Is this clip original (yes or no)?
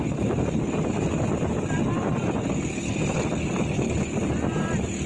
yes